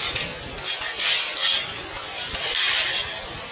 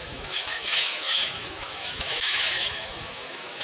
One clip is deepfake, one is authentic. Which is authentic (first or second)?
first